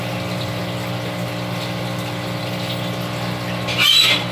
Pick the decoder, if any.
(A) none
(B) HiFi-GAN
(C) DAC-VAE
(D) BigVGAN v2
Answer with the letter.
A